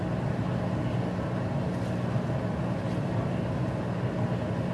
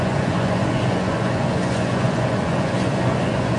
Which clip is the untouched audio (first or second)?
first